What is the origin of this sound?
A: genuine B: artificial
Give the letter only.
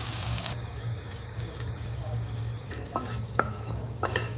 B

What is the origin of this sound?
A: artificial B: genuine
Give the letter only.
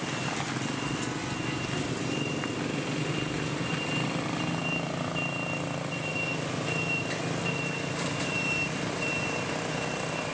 B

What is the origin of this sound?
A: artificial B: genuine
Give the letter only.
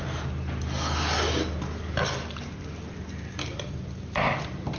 B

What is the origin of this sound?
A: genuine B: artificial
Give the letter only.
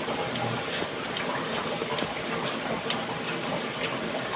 A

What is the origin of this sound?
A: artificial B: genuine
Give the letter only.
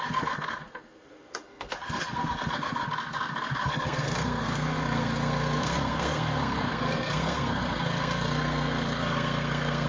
A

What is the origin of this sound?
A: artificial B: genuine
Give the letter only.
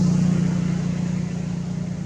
B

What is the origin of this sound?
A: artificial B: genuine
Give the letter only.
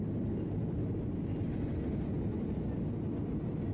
B